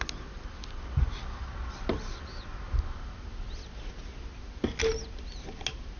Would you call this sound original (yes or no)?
yes